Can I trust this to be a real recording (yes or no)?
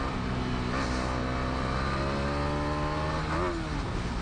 yes